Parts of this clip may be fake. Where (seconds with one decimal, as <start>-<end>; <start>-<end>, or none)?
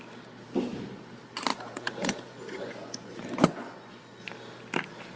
1.5-4.3